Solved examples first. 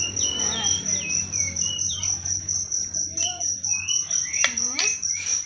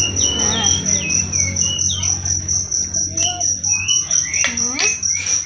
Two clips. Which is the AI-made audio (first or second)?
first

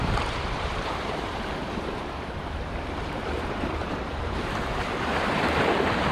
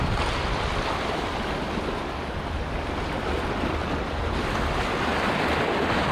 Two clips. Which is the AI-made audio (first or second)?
first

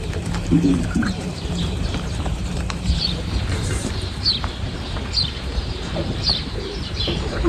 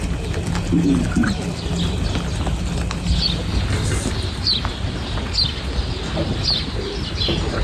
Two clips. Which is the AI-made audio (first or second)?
first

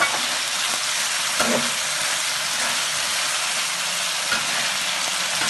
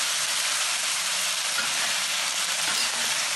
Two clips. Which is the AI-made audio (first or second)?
second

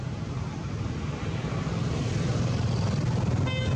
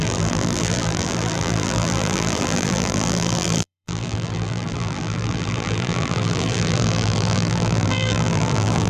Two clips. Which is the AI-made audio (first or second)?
second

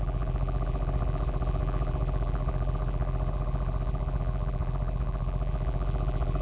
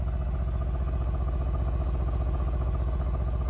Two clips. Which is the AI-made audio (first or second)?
first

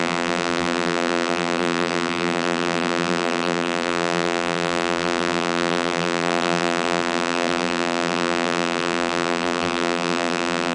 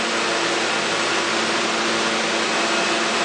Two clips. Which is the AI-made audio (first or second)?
first